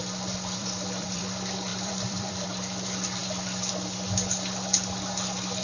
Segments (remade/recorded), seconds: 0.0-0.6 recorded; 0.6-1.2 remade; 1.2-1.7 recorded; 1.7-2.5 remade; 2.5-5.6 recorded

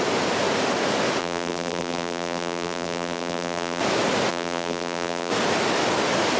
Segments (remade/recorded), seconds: 0.0-1.2 recorded; 1.2-3.8 remade; 3.8-4.3 recorded; 4.3-5.3 remade; 5.3-6.4 recorded